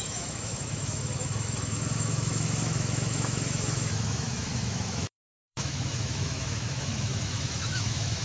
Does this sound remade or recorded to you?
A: remade